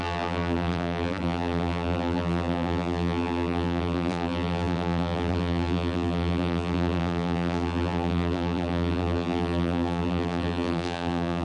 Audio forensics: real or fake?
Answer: fake